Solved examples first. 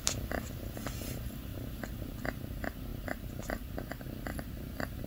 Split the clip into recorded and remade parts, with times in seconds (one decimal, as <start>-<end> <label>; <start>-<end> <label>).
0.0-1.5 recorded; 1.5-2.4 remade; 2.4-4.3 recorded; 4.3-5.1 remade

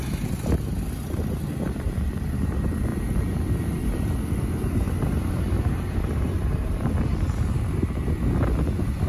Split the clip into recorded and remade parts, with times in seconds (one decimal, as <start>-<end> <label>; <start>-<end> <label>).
0.0-9.1 recorded

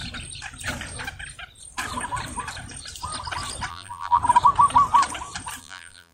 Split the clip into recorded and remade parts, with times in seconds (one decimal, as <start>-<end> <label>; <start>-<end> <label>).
0.0-3.7 recorded; 3.7-4.2 remade; 4.2-5.6 recorded; 5.6-6.1 remade